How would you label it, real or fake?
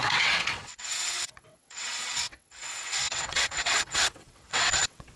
fake